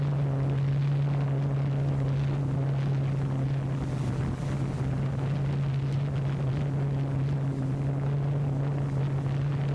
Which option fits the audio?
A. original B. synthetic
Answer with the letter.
A